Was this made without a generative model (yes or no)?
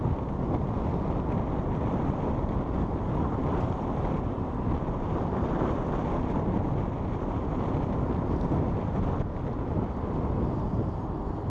yes